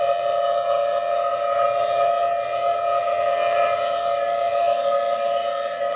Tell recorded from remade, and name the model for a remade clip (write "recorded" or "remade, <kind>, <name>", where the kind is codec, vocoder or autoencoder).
remade, vocoder, HiFi-GAN